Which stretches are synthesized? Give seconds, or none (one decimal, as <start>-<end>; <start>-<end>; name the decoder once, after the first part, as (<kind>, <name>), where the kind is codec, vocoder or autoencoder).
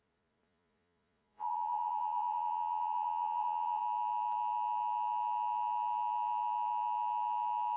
0.0-3.8 (vocoder, Vocos)